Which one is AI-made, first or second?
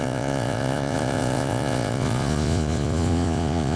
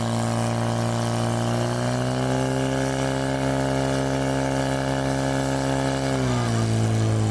first